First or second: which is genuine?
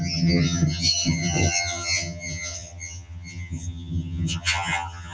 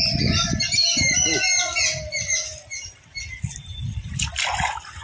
second